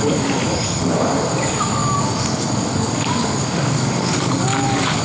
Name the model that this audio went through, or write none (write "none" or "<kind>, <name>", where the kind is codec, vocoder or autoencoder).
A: codec, DAC